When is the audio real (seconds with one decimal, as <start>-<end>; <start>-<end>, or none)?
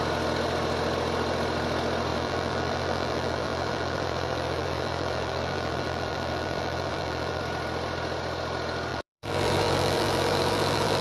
0.0-2.1; 7.4-8.9